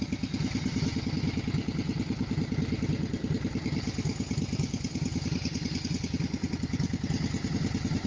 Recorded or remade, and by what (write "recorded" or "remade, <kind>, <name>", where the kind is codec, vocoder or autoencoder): recorded